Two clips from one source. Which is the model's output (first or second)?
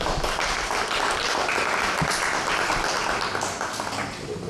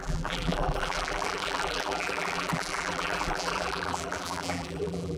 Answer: second